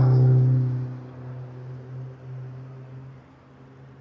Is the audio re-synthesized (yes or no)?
no